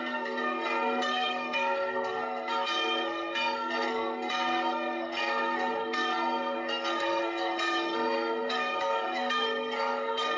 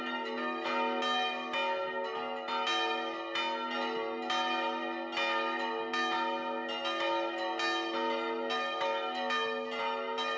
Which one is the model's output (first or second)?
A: first